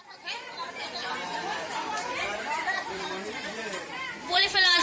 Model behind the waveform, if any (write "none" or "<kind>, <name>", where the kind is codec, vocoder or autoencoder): vocoder, BigVGAN v2